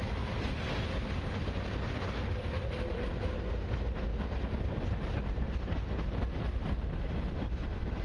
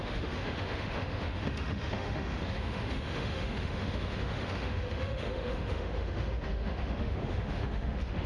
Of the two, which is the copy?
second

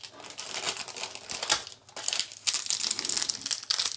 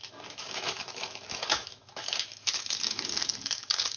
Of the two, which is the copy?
second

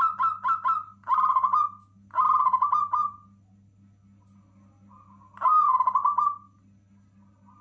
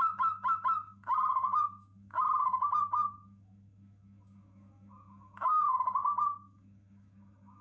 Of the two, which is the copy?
second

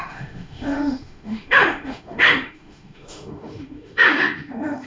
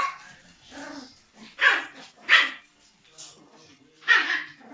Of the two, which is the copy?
first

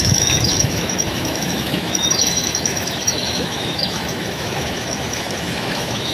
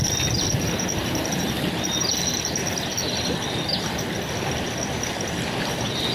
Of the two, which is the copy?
first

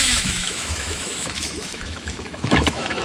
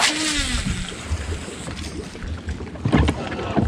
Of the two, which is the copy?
first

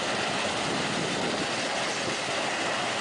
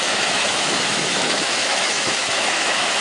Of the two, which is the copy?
second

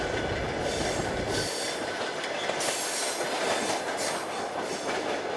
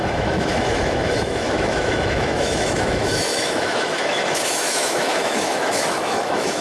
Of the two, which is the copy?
second